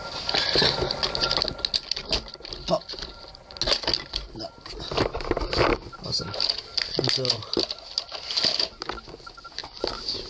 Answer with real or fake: real